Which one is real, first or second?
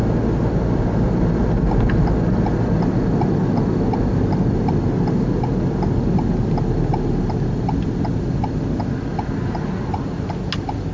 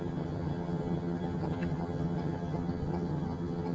first